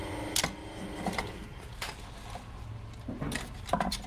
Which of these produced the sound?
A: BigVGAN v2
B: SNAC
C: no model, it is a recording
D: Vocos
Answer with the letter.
C